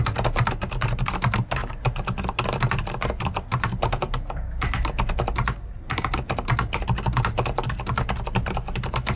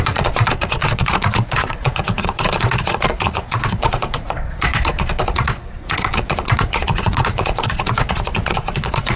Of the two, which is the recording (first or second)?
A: first